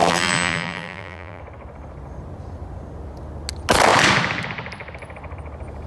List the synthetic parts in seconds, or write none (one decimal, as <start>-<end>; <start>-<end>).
0.0-1.4